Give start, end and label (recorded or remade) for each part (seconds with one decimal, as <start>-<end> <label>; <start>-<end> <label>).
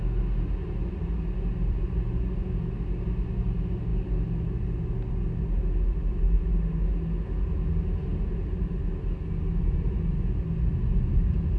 0.0-11.6 recorded